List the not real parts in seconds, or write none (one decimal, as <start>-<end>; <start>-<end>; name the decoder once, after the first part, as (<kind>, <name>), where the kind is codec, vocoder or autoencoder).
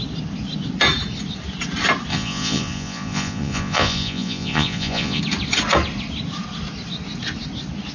2.1-5.2 (vocoder, Vocos)